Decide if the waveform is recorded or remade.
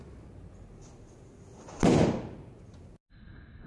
recorded